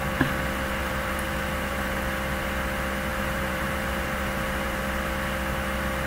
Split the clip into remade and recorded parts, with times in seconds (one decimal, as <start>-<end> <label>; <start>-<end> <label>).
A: 0.0-0.8 recorded; 0.8-2.0 remade; 2.0-3.1 recorded; 3.1-4.8 remade; 4.8-6.1 recorded